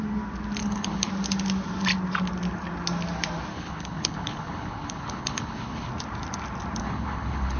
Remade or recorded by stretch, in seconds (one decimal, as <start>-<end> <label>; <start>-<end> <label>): 0.0-0.6 recorded; 0.6-1.1 remade; 1.1-3.5 recorded; 3.5-5.9 remade; 5.9-6.8 recorded; 6.8-7.6 remade